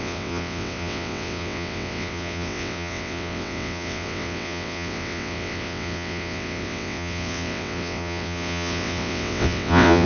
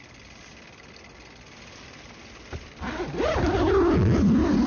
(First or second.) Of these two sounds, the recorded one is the second